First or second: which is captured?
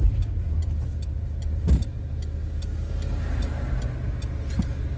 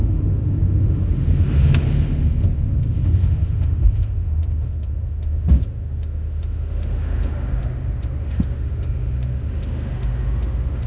first